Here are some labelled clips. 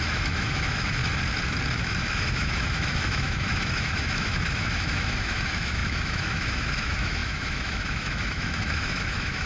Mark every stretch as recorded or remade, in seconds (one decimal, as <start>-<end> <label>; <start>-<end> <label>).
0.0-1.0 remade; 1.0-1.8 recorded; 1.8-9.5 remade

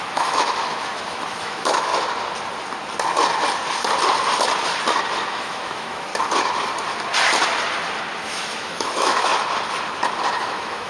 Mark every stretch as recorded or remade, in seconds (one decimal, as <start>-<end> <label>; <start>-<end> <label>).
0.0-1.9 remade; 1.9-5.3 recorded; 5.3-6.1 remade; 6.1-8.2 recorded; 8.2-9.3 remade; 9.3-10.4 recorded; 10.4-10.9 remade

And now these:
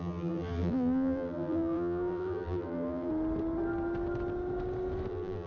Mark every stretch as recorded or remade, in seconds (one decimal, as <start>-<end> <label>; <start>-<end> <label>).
0.0-3.1 remade; 3.1-5.1 recorded; 5.1-5.5 remade

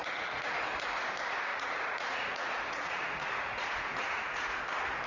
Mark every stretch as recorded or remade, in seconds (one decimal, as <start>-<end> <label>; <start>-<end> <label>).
0.0-0.6 remade; 0.6-1.5 recorded; 1.5-4.6 remade; 4.6-5.1 recorded